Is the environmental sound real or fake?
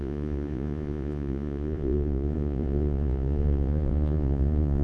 fake